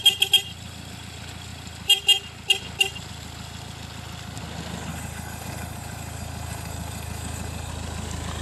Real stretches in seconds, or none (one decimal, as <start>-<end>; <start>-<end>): 0.0-4.9; 7.7-8.4